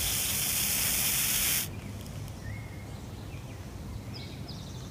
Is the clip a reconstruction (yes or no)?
no